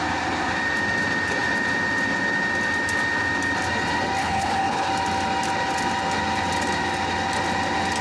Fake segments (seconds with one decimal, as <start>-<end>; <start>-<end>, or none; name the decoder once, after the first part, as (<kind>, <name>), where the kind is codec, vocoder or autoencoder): 4.2-4.9 (codec, HILCodec)